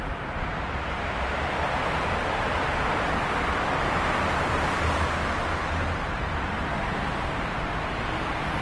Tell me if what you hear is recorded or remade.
remade